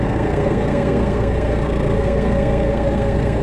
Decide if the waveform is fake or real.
fake